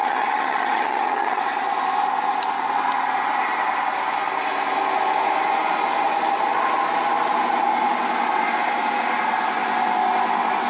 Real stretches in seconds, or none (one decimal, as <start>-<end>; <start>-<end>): 1.4-10.7